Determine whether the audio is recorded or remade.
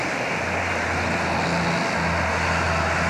recorded